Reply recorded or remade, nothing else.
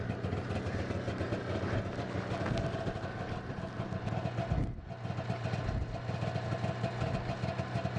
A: recorded